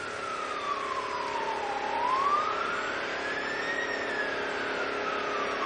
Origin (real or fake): real